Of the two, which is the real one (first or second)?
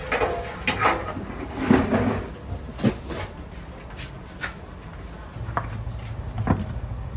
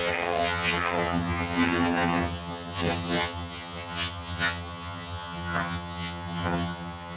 first